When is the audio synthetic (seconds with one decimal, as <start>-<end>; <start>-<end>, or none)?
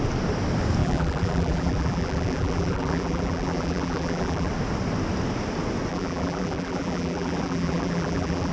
0.8-4.5; 5.9-8.5